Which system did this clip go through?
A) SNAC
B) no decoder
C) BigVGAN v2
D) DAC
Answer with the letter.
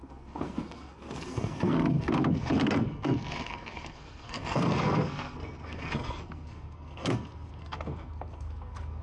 A